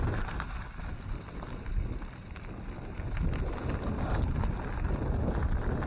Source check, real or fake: real